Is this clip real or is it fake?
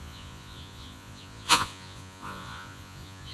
fake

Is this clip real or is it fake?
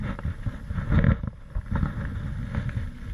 real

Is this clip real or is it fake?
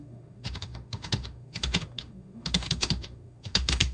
fake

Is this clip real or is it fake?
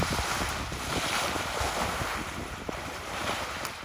real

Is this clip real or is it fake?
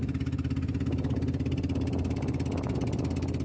real